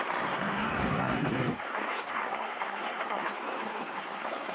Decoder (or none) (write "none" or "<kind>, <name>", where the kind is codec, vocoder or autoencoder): codec, SNAC